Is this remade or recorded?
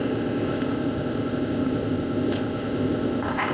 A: remade